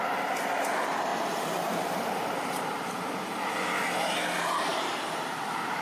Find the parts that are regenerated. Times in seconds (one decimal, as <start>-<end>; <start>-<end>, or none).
1.1-3.4; 4.7-5.8